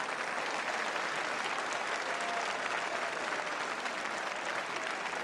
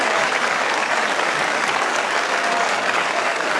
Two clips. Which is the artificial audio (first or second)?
second